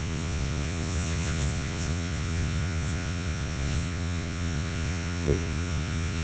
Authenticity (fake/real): fake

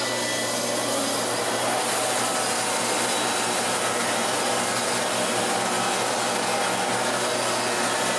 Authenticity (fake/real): real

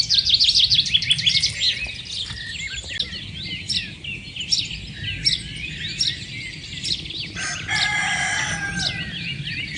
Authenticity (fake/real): real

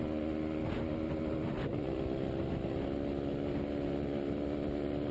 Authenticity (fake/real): real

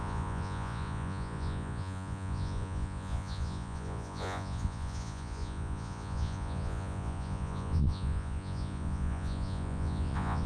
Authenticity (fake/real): fake